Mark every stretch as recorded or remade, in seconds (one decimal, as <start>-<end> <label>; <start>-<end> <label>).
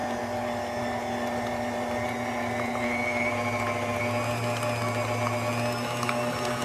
0.0-6.6 recorded